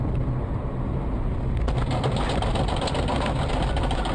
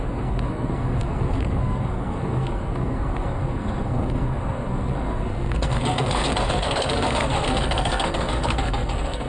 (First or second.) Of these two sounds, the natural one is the first